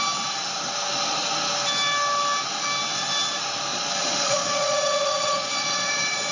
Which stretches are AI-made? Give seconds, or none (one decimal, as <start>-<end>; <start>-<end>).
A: 3.7-6.3